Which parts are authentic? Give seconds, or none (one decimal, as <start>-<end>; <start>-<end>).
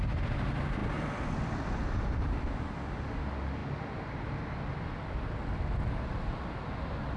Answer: 0.0-7.2